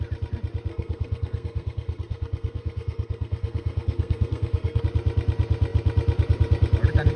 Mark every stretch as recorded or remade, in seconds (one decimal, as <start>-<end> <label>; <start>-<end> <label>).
0.0-0.7 recorded; 0.7-4.8 remade; 4.8-7.2 recorded